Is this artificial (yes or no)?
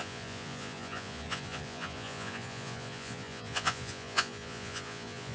yes